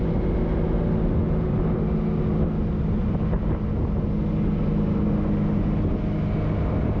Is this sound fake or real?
real